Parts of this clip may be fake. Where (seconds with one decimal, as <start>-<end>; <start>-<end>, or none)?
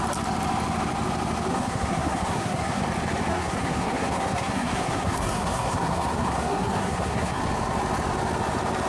1.5-2.8; 3.3-7.4